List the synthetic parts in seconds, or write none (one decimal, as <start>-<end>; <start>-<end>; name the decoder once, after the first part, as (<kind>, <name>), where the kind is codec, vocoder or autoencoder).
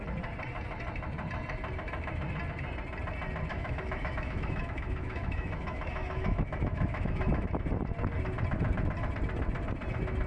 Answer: 3.5-7.5 (autoencoder, DAC-VAE)